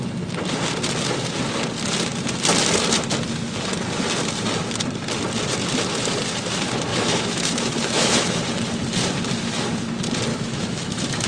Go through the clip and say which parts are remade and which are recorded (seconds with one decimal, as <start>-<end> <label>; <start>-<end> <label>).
0.0-6.9 recorded; 6.9-8.4 remade; 8.4-10.3 recorded; 10.3-11.3 remade